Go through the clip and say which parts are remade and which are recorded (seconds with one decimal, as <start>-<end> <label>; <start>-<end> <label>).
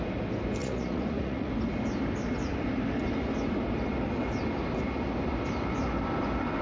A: 0.0-0.6 recorded; 0.6-1.5 remade; 1.5-6.6 recorded